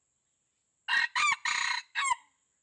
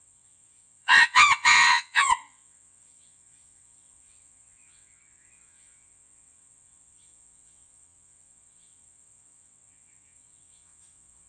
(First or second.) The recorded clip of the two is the first